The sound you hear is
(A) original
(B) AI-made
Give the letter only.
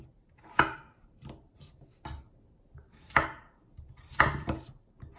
A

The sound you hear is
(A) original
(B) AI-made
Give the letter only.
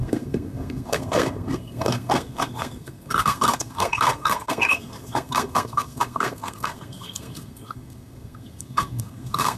B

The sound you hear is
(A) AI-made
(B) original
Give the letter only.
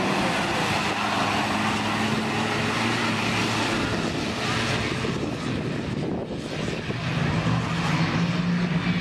B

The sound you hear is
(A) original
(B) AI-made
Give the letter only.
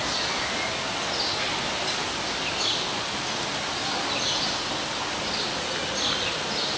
A